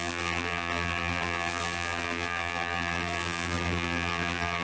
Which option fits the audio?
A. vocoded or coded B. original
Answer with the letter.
A